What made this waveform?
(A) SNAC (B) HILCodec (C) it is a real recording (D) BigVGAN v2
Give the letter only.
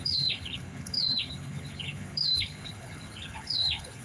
B